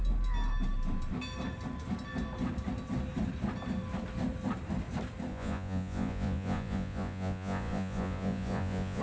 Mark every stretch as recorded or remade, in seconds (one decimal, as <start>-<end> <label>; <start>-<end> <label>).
0.0-5.3 recorded; 5.3-9.0 remade